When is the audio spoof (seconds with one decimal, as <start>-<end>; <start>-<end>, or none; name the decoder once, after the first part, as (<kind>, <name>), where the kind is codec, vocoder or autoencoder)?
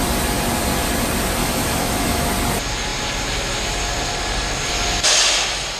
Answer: 1.4-2.3 (autoencoder, DAC-VAE)